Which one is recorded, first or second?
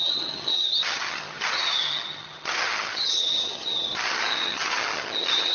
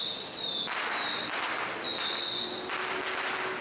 second